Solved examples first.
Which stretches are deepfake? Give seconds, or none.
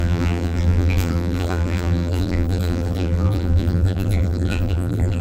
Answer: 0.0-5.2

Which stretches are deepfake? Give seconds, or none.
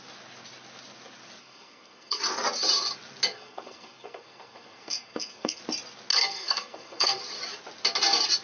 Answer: 1.4-2.2; 3.3-5.6; 6.1-7.2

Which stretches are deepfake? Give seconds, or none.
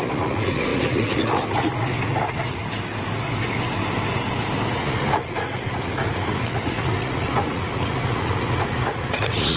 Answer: 0.0-2.6; 4.7-9.6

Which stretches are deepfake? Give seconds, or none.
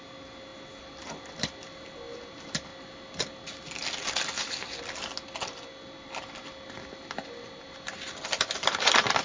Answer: none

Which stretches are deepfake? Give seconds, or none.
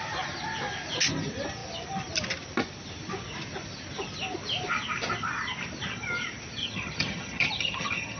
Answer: 6.6-8.2